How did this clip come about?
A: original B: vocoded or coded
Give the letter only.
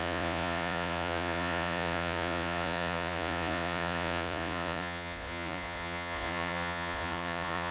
B